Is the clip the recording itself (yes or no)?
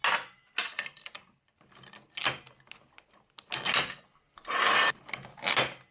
yes